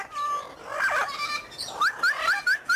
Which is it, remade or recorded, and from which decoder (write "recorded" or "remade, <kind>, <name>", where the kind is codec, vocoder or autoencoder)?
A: recorded